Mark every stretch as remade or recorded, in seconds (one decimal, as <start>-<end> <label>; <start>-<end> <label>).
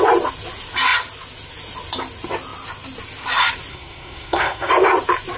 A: 0.0-3.7 recorded; 3.7-4.7 remade; 4.7-5.4 recorded